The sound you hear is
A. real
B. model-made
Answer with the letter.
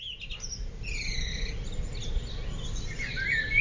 A